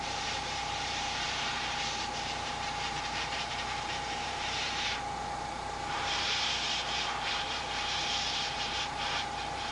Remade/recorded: remade